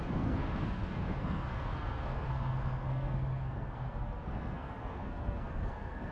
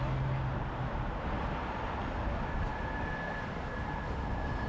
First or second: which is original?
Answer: second